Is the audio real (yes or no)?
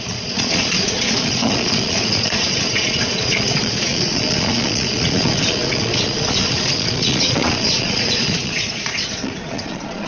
no